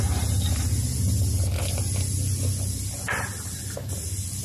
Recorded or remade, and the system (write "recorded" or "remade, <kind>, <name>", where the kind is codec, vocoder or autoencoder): recorded